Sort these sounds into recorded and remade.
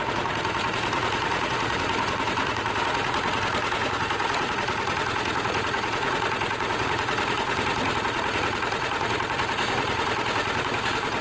remade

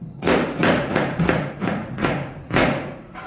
remade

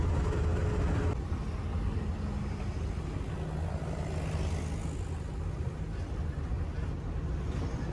recorded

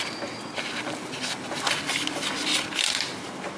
recorded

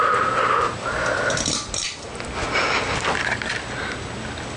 recorded